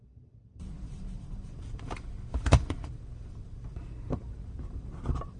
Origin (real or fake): fake